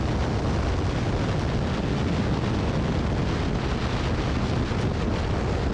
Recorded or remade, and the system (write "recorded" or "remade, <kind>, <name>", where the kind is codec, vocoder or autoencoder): recorded